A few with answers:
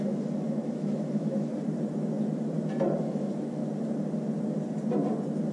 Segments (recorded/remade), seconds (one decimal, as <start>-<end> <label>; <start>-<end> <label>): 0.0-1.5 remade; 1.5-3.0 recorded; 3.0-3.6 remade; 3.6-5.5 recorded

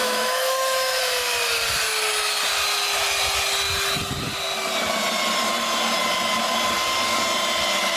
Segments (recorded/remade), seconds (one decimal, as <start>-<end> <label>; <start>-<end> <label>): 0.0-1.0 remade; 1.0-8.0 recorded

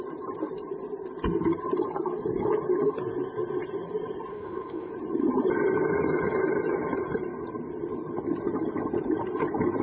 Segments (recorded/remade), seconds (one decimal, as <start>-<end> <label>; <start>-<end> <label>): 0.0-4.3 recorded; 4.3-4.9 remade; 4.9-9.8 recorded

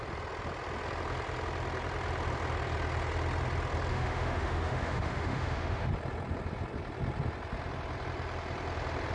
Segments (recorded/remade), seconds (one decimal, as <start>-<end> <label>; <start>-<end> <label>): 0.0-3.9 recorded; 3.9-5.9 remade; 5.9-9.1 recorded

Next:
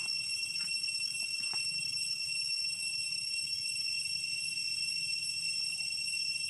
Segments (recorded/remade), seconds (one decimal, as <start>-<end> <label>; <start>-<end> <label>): 0.0-3.9 remade; 3.9-6.5 recorded

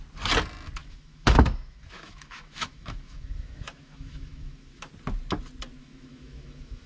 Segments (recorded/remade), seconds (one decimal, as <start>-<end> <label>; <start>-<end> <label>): 0.0-0.8 recorded; 0.8-4.9 remade; 4.9-5.8 recorded; 5.8-6.9 remade

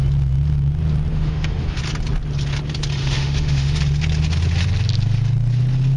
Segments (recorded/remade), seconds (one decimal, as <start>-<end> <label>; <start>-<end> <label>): 0.0-1.1 recorded; 1.1-1.8 remade; 1.8-3.0 recorded; 3.0-3.8 remade; 3.8-6.0 recorded